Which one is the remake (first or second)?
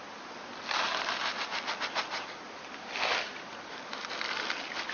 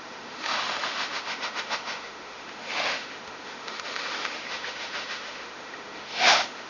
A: second